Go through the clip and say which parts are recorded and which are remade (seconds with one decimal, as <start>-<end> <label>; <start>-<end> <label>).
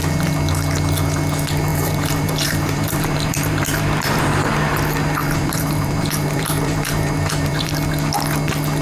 0.0-1.7 recorded; 1.7-4.5 remade; 4.5-5.2 recorded; 5.2-7.9 remade; 7.9-8.8 recorded